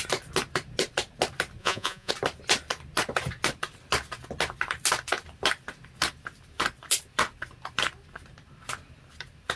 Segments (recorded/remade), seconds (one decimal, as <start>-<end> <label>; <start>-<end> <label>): 0.0-1.6 recorded; 1.6-2.1 remade; 2.1-9.6 recorded